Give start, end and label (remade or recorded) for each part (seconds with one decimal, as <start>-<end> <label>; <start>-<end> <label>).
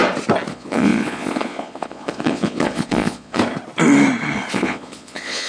0.0-0.5 recorded; 0.5-3.4 remade; 3.4-4.5 recorded; 4.5-5.5 remade